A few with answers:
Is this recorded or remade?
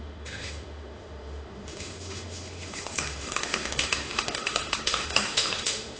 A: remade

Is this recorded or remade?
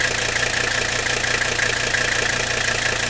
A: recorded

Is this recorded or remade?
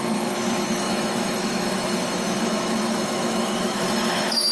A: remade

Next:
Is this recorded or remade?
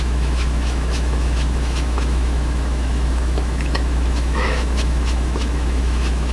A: remade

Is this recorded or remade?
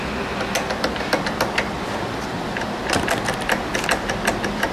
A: recorded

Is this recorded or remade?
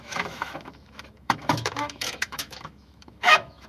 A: remade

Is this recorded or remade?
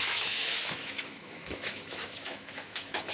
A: remade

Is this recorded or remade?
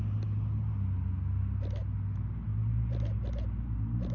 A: recorded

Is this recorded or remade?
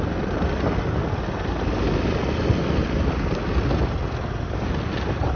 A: recorded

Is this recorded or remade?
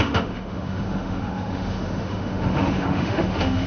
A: remade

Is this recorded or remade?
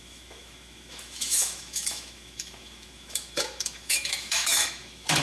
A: remade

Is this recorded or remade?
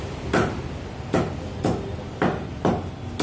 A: recorded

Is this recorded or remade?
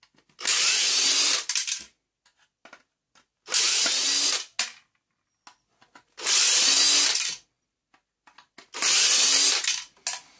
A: recorded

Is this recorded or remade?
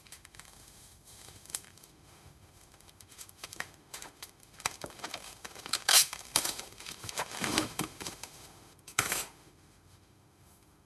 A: remade